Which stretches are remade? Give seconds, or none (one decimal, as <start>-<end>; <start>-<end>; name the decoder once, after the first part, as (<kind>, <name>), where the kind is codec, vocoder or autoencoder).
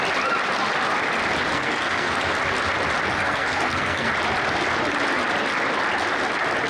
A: 1.5-2.2 (codec, SNAC); 3.1-4.1